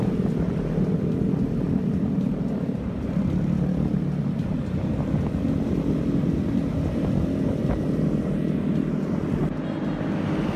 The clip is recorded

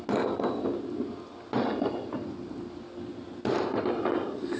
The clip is recorded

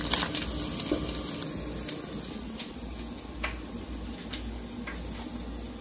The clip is recorded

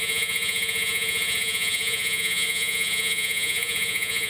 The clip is remade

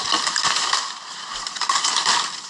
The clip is recorded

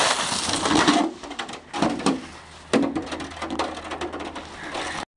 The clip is recorded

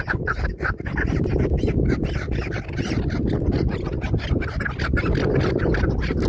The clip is recorded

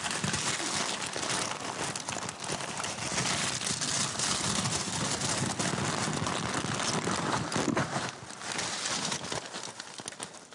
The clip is recorded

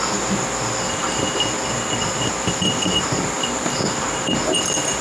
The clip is recorded